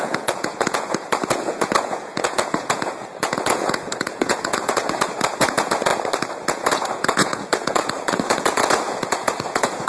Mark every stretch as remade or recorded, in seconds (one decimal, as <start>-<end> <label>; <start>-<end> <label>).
0.0-5.9 remade; 5.9-6.5 recorded; 6.5-9.9 remade